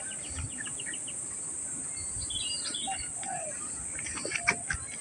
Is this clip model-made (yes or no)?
no